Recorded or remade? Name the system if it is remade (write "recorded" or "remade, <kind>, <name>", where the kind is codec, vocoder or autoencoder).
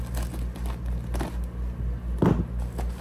recorded